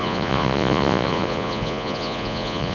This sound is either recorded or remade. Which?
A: remade